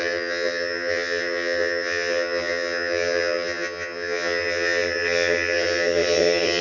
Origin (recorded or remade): remade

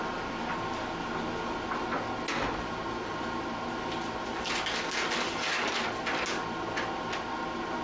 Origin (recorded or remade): recorded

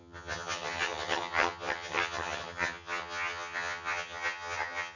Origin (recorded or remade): remade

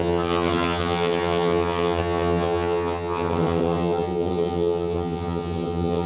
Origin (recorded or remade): remade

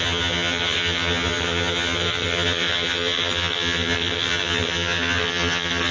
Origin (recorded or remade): remade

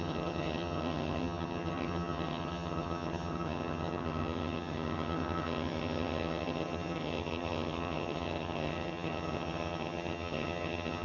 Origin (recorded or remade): remade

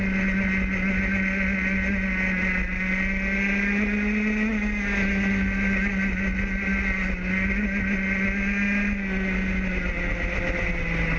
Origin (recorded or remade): recorded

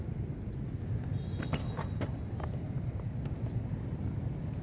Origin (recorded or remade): recorded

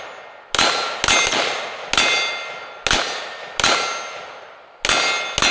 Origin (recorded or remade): recorded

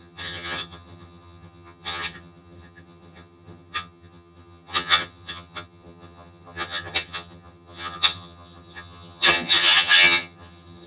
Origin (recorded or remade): remade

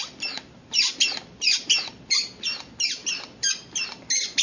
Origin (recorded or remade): recorded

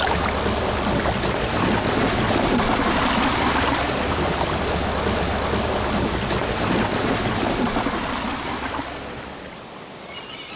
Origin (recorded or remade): recorded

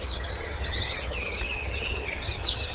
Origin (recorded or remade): remade